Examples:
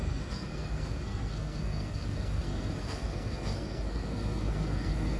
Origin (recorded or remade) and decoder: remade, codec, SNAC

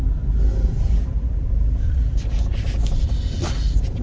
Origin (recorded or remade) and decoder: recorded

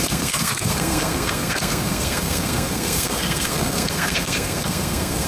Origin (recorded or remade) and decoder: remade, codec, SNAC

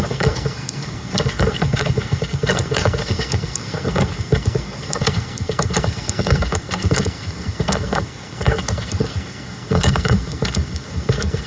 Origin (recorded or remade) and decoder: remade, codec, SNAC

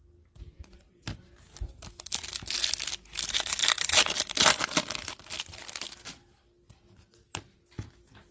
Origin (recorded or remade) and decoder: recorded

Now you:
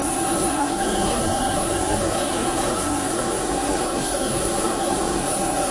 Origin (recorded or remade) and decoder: remade, codec, SNAC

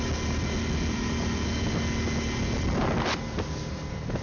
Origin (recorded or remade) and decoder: recorded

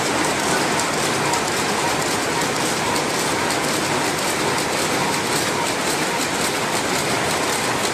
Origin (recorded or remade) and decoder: recorded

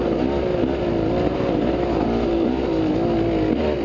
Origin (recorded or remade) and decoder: recorded